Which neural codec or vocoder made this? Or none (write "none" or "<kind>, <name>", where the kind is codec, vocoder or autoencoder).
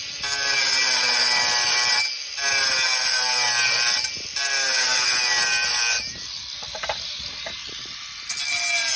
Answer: none